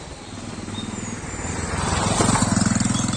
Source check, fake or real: real